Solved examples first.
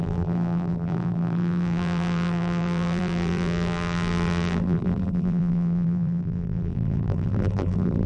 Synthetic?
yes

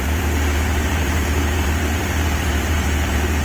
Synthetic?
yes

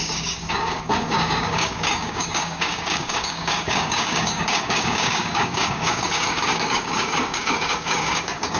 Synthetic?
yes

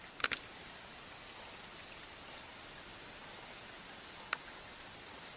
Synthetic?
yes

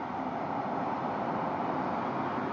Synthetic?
no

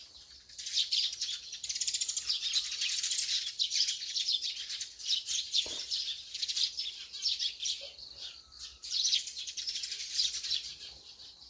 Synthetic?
yes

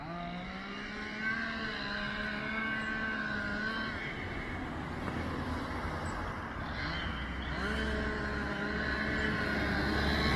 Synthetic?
no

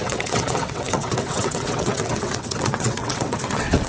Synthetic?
yes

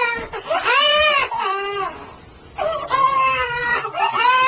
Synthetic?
no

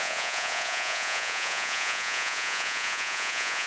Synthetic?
yes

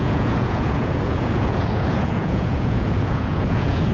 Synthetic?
yes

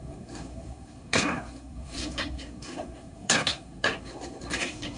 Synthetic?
yes